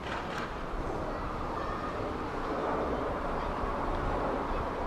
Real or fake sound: fake